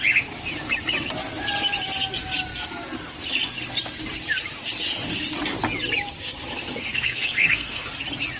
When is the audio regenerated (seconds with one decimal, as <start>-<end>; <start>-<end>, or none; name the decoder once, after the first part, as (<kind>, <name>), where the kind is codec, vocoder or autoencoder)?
6.8-7.8 (codec, SNAC)